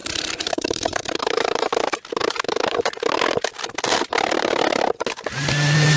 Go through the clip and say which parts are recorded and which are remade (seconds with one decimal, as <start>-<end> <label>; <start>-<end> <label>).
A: 0.0-1.7 remade; 1.7-2.2 recorded; 2.2-3.1 remade; 3.1-6.0 recorded